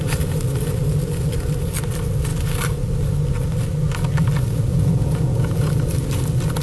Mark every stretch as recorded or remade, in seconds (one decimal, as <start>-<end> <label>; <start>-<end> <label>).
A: 0.0-4.7 recorded; 4.7-5.7 remade; 5.7-6.6 recorded